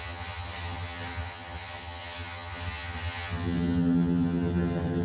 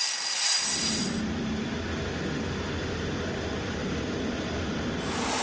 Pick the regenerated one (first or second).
first